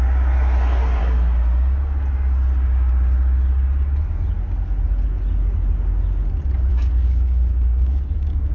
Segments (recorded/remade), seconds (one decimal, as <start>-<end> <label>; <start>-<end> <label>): 0.0-6.7 recorded; 6.7-8.5 remade